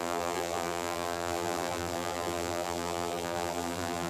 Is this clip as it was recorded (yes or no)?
no